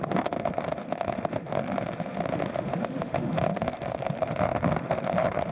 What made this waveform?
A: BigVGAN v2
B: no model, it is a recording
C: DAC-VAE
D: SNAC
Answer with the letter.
C